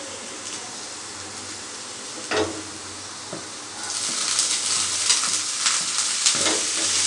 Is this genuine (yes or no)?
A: yes